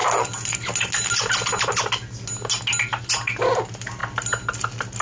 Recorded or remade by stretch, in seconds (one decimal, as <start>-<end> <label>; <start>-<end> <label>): 0.0-5.0 recorded